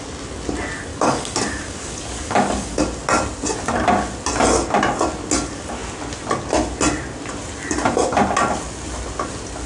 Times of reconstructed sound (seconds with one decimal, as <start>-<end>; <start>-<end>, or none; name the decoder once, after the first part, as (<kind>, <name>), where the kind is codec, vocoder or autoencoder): 0.9-2.8 (codec, DAC)

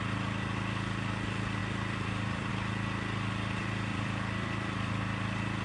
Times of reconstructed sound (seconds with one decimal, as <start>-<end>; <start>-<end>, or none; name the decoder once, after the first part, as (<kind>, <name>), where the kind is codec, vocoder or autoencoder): 1.6-2.5 (vocoder, BigVGAN v2); 3.9-5.0